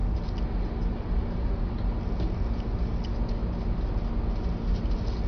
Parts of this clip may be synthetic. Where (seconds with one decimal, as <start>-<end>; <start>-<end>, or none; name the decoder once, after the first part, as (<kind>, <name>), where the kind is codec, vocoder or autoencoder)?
none